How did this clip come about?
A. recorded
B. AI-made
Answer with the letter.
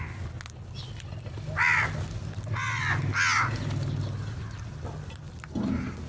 A